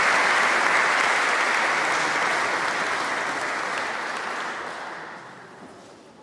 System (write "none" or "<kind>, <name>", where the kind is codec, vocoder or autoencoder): none